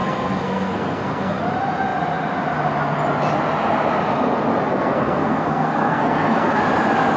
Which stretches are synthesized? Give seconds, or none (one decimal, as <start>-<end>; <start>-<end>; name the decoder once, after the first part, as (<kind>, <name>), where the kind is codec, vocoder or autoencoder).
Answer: 0.0-1.4 (codec, SNAC); 4.7-6.6